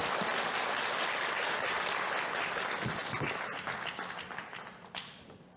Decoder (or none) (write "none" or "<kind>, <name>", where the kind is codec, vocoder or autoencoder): none